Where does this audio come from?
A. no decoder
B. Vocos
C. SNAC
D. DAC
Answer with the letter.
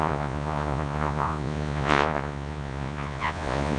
B